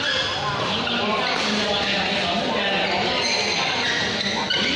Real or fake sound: real